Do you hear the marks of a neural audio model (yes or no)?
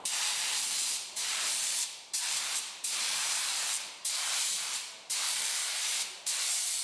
yes